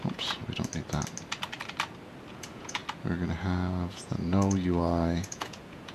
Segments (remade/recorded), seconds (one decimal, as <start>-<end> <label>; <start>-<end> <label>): 0.0-0.4 remade; 0.4-2.3 recorded; 2.3-2.8 remade; 2.8-3.4 recorded; 3.4-5.9 remade